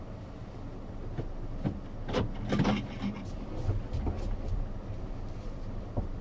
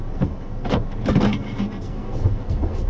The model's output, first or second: second